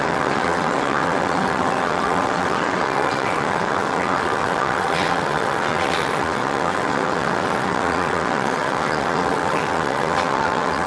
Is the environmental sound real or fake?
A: fake